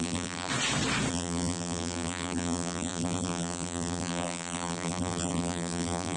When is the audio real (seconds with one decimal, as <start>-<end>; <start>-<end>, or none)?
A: 0.5-1.1